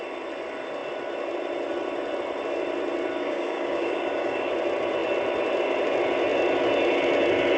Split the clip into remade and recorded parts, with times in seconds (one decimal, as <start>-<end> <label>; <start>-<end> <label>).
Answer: 0.0-3.2 recorded; 3.2-4.5 remade; 4.5-7.6 recorded